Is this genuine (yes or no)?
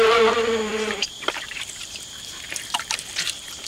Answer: no